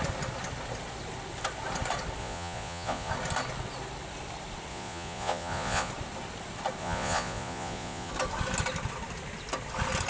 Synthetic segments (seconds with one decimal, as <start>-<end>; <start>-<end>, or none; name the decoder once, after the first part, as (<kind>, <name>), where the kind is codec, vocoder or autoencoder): 2.2-3.1 (vocoder, Vocos); 4.7-5.9; 6.8-8.1